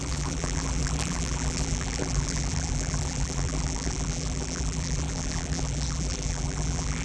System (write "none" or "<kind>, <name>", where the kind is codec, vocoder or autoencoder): vocoder, BigVGAN v2